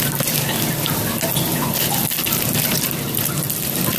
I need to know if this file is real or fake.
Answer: real